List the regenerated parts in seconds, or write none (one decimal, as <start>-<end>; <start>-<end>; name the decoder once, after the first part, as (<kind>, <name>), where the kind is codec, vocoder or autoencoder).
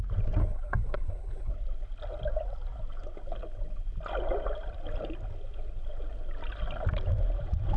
0.4-1.5 (codec, HILCodec)